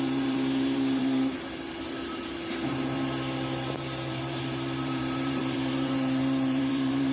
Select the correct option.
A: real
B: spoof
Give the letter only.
B